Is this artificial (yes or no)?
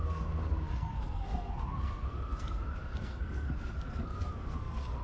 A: yes